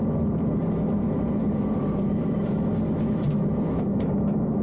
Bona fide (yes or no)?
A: no